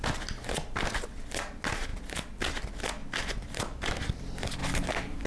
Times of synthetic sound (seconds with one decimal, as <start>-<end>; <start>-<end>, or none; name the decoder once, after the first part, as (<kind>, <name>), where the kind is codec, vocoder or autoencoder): none